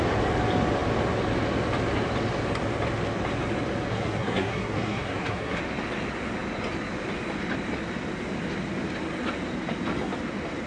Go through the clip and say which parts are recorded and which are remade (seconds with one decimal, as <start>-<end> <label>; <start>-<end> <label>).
0.0-3.9 recorded; 3.9-5.6 remade; 5.6-10.7 recorded